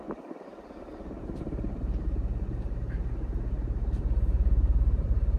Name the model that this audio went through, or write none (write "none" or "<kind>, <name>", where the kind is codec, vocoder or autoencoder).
vocoder, BigVGAN v2